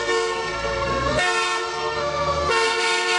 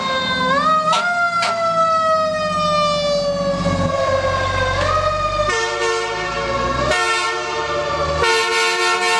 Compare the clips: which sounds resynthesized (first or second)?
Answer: first